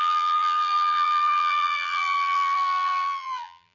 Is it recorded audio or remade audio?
remade